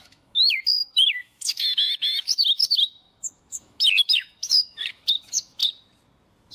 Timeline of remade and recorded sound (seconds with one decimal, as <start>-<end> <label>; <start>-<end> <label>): 0.0-5.6 remade; 5.6-6.5 recorded